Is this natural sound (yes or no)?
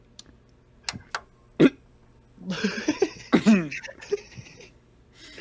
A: yes